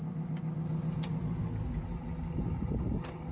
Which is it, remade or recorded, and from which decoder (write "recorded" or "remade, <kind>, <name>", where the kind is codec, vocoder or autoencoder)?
recorded